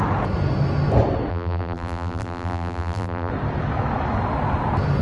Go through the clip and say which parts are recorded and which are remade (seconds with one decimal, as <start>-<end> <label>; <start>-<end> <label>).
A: 0.0-1.3 recorded; 1.3-3.3 remade; 3.3-5.0 recorded